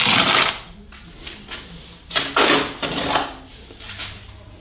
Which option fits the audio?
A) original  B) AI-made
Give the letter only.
A